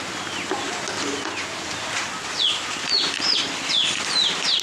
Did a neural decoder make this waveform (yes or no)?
no